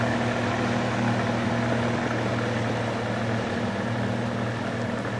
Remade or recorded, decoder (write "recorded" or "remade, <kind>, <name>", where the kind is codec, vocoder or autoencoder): recorded